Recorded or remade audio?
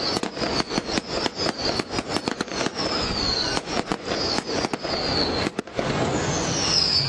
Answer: remade